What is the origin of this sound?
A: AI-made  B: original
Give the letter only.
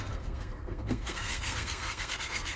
A